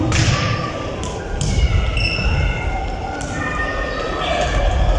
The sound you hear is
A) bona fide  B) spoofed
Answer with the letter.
A